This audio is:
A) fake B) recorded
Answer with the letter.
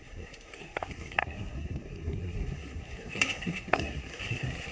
A